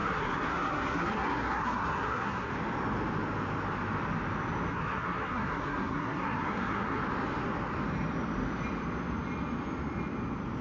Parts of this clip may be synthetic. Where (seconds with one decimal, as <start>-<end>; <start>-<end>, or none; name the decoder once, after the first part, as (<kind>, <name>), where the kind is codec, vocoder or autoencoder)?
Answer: 0.0-2.5 (codec, SNAC); 4.7-7.0